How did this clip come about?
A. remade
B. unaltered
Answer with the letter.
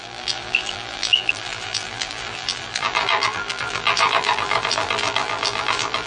A